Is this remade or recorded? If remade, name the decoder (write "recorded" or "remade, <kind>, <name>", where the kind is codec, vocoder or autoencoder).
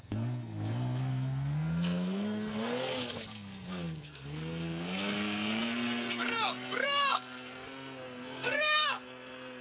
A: remade, codec, SNAC